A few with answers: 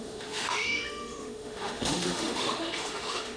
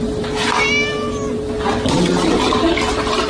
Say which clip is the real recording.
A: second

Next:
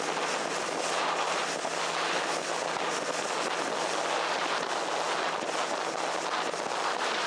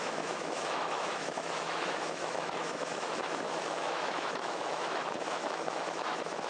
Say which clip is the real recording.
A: first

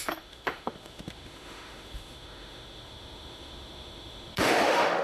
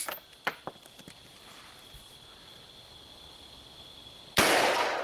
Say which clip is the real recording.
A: second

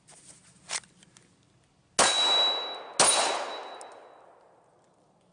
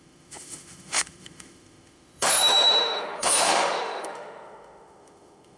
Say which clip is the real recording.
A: first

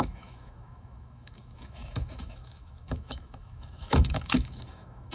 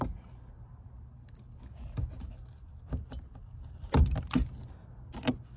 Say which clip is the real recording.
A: second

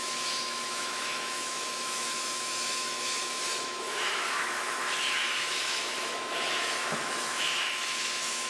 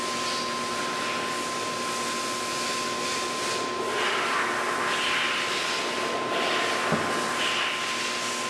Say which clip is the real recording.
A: second